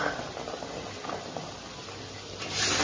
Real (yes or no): yes